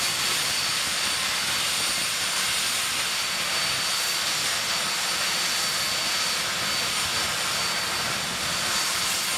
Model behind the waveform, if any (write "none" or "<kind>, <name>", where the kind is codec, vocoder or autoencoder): none